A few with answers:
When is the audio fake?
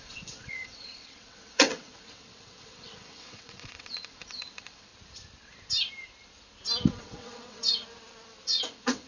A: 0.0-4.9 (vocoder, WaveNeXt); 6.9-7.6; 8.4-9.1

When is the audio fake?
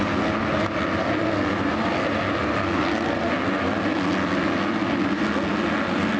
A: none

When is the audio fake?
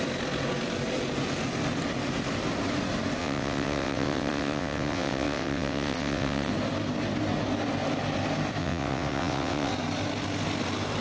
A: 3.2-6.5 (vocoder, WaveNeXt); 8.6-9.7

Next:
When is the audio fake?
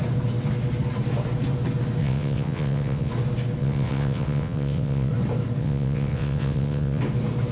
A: 2.0-3.1 (vocoder, WaveNeXt); 3.6-5.1; 5.6-7.0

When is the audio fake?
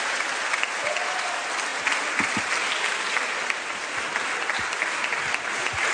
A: none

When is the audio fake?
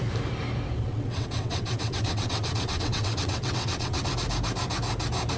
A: 0.9-4.1 (vocoder, WaveNeXt)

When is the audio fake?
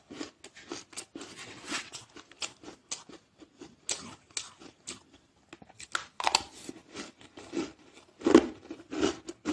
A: 1.4-2.0 (vocoder, WaveNeXt)